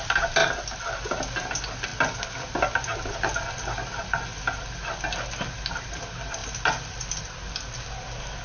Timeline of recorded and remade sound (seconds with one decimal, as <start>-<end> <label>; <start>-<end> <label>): 0.0-6.4 recorded; 6.4-7.2 remade; 7.2-8.4 recorded